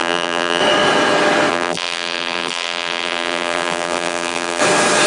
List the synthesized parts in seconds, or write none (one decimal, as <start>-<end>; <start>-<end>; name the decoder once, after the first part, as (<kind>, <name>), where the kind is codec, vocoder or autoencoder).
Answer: 0.0-0.6 (vocoder, BigVGAN v2); 1.5-4.6